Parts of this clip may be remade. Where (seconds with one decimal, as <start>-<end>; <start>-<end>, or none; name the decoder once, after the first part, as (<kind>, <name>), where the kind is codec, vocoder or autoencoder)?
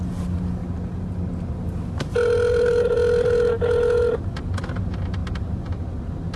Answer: none